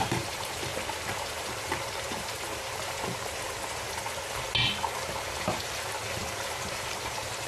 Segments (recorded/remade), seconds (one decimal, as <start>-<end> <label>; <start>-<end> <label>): 0.0-0.7 remade; 0.7-5.2 recorded; 5.2-6.2 remade; 6.2-6.7 recorded; 6.7-7.5 remade